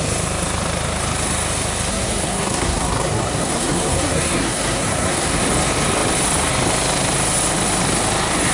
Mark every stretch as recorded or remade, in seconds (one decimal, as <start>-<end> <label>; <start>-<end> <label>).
0.0-1.9 recorded; 1.9-5.4 remade; 5.4-8.5 recorded